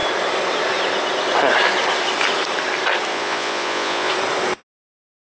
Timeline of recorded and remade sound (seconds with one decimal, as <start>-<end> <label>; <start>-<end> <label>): 0.0-3.1 recorded; 3.1-4.1 remade; 4.1-5.2 recorded